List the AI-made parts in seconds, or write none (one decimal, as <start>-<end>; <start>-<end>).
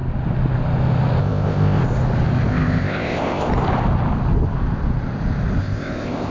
1.2-1.8; 2.5-3.5; 5.6-6.3